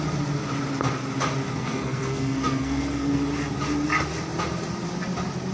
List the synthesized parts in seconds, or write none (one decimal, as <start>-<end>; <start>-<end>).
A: 1.5-3.2